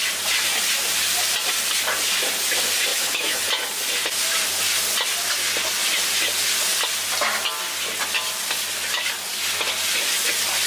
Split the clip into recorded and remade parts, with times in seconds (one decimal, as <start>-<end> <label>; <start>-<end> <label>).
0.0-2.9 recorded; 2.9-3.4 remade; 3.4-10.7 recorded